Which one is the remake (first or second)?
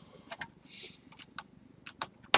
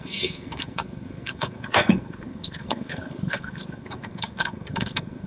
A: second